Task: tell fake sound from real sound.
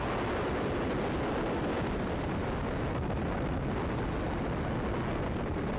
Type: real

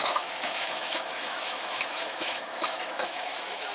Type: fake